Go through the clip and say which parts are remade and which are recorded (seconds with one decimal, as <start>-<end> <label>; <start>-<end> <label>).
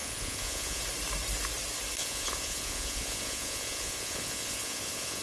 0.0-0.8 remade; 0.8-2.0 recorded; 2.0-5.2 remade